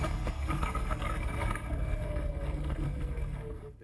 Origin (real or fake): fake